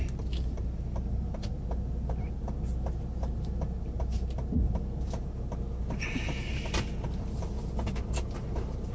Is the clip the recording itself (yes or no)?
yes